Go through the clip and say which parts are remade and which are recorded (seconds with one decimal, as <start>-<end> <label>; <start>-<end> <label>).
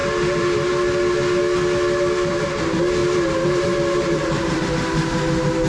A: 0.0-0.7 remade; 0.7-3.0 recorded; 3.0-4.6 remade; 4.6-5.7 recorded